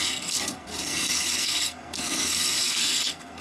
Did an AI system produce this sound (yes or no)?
yes